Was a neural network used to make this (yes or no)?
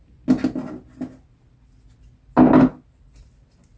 no